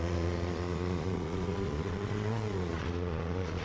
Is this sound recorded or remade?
remade